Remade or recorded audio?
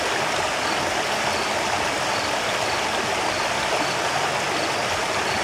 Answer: recorded